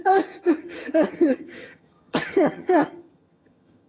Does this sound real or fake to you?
fake